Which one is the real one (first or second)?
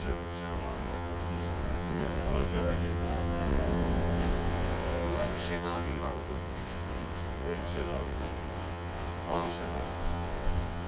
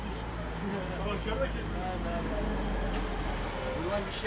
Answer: second